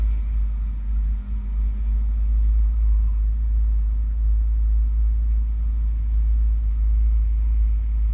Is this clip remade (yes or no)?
no